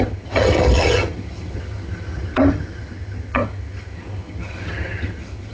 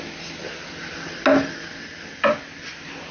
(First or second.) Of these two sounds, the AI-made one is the first